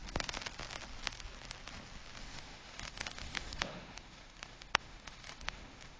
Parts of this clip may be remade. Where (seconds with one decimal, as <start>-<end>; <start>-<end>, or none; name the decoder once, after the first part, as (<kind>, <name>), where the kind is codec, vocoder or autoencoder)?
2.2-6.0 (autoencoder, DAC-VAE)